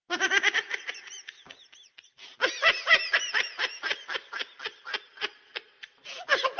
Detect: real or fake fake